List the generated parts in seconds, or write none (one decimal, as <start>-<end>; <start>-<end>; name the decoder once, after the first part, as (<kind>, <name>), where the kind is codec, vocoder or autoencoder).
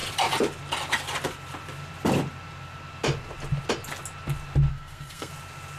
4.7-5.3 (codec, SNAC)